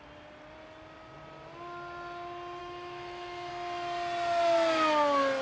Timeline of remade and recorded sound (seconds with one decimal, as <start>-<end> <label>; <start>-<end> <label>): 0.0-2.6 recorded; 2.6-3.5 remade; 3.5-5.4 recorded

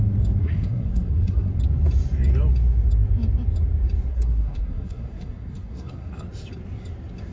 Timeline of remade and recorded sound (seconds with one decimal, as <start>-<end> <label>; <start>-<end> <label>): 0.0-0.4 recorded; 0.4-1.5 remade; 1.5-4.1 recorded; 4.1-6.1 remade; 6.1-7.3 recorded

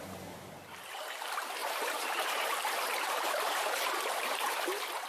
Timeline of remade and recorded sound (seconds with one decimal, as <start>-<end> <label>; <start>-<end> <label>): 0.0-1.6 recorded; 1.6-4.6 remade; 4.6-5.1 recorded

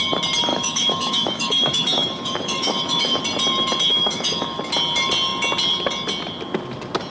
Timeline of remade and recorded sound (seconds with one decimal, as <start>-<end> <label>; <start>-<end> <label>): 0.0-0.5 recorded; 0.5-3.2 remade; 3.2-3.9 recorded; 3.9-4.6 remade; 4.6-7.1 recorded

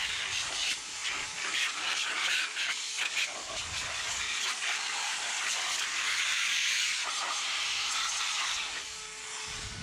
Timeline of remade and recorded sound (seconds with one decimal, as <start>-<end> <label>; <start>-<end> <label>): 0.0-7.0 remade; 7.0-8.3 recorded; 8.3-9.8 remade

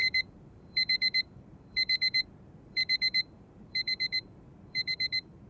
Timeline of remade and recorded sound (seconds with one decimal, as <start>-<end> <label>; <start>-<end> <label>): 0.0-5.5 remade

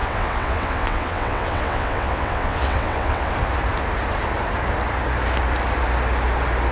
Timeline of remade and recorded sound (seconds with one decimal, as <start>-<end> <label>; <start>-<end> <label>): 0.0-3.3 remade; 3.3-6.7 recorded

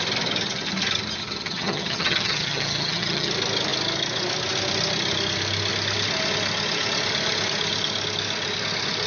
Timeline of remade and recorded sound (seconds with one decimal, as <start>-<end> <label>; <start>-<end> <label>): 0.0-1.2 recorded; 1.2-3.3 remade; 3.3-9.1 recorded